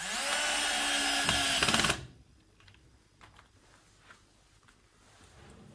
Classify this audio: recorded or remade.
recorded